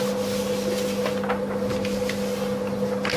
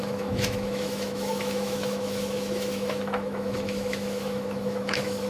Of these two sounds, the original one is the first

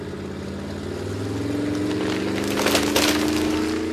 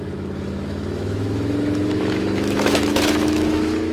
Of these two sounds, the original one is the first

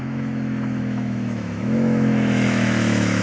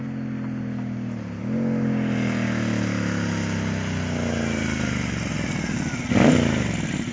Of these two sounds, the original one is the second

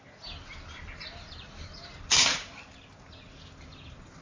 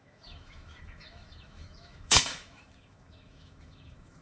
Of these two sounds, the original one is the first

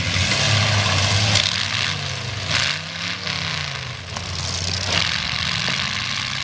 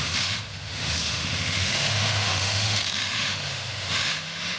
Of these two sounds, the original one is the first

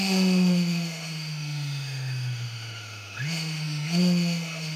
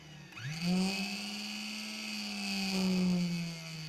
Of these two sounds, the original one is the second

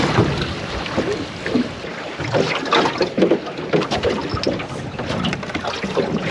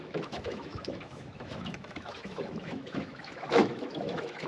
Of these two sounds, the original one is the first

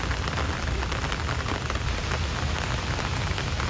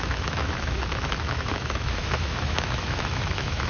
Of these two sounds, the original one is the first